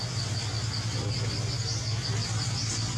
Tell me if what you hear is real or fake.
real